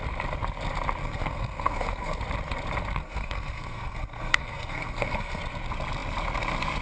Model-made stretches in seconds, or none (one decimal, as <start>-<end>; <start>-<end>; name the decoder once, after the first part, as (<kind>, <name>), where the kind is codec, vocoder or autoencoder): 1.0-2.2 (codec, SNAC); 3.0-5.4